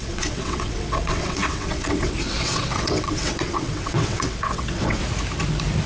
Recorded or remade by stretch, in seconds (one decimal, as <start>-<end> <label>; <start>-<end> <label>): 0.0-5.0 remade; 5.0-5.9 recorded